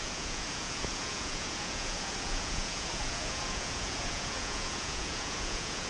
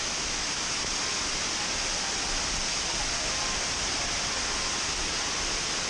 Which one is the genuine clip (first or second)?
second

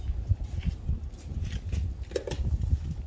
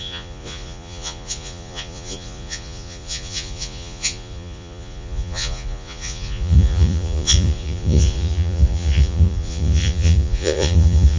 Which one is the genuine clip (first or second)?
first